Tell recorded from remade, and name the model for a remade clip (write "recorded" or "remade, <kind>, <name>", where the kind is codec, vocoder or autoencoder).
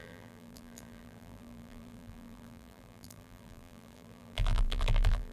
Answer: remade, vocoder, BigVGAN v2